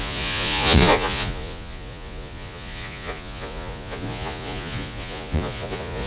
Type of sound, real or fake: fake